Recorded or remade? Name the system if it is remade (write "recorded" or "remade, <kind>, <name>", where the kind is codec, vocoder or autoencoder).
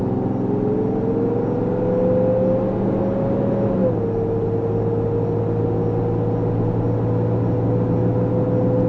recorded